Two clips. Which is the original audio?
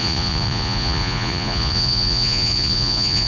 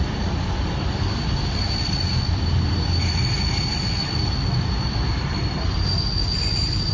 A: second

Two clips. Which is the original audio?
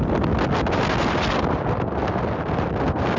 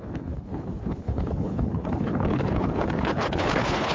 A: first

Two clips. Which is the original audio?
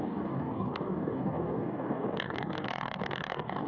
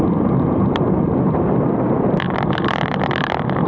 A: second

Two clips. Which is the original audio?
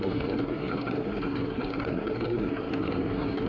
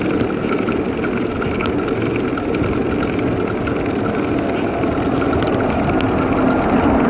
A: second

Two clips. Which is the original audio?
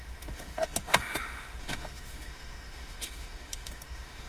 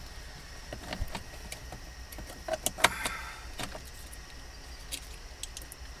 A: second